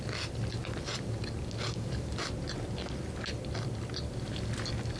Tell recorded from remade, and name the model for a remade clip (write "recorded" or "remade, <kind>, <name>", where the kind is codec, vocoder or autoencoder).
recorded